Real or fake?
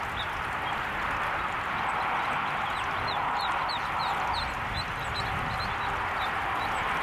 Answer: real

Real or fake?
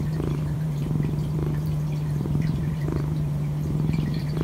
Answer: fake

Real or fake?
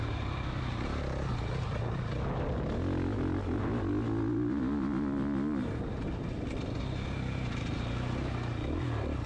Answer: real